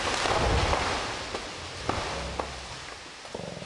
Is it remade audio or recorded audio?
recorded